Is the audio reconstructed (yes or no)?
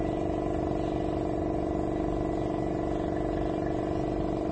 no